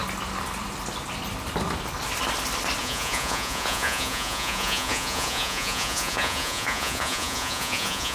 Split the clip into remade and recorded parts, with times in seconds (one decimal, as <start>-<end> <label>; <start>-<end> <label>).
0.0-2.8 recorded; 2.8-8.1 remade